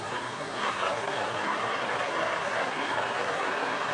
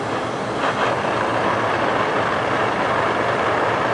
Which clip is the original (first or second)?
second